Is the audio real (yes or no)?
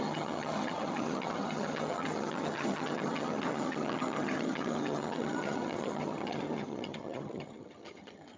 no